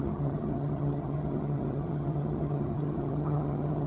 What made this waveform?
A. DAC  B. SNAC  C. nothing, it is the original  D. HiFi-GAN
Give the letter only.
D